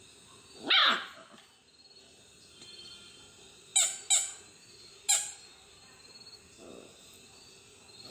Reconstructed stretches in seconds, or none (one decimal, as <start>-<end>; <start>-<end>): none